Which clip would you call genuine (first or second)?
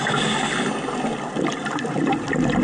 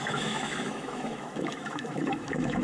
first